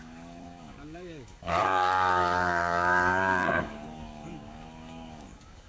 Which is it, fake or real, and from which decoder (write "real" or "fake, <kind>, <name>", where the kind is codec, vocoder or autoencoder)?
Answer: fake, codec, DAC